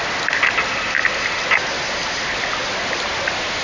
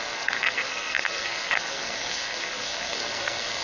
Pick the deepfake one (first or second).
second